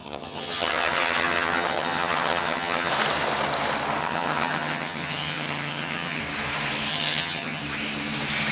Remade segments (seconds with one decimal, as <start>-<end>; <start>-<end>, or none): 0.0-2.9; 4.0-6.2; 6.9-7.6